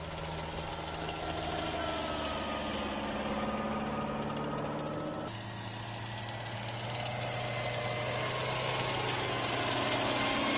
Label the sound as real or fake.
real